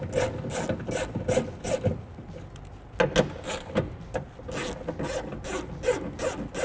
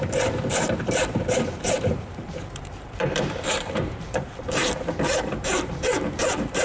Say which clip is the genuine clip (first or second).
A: first